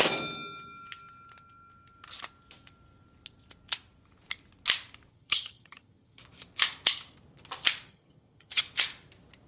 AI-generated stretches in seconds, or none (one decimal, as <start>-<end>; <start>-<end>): 5.1-6.2; 7.9-8.6

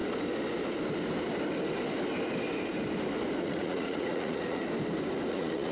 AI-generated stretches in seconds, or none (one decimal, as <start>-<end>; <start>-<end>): 3.4-4.6; 5.3-5.7

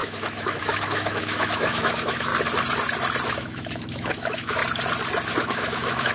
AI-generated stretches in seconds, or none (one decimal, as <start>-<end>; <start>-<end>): 0.0-2.3; 3.3-4.6; 5.4-6.1

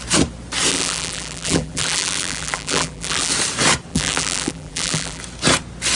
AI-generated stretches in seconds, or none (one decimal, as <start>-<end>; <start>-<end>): 0.7-3.3; 3.9-5.2

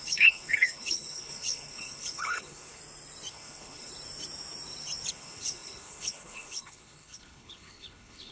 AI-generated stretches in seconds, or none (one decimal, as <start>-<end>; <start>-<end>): 0.0-2.8; 3.3-3.9; 5.1-8.3

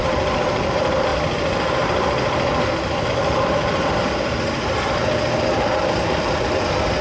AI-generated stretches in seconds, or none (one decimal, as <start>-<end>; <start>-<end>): 0.0-1.1; 3.1-7.0